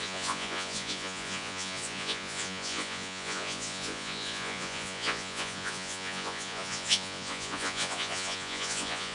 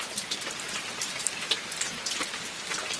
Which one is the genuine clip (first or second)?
second